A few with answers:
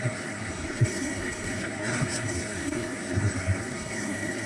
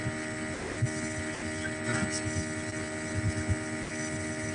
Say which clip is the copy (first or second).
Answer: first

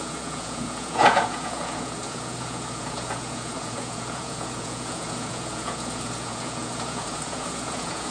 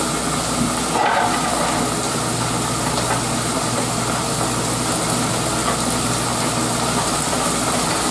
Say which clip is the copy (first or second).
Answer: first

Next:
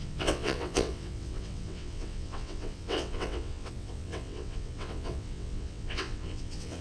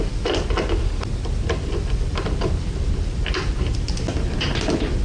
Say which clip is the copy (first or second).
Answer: first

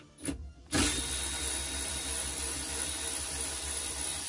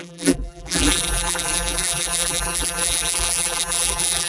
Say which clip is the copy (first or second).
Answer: second